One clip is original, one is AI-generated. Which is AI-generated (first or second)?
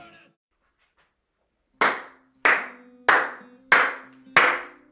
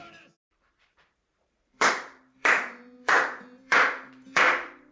second